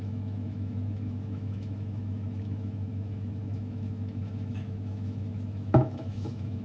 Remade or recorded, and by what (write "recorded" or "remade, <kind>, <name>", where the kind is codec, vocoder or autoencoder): remade, autoencoder, DAC-VAE